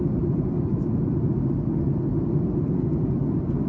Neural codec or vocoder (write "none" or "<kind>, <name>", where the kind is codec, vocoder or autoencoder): none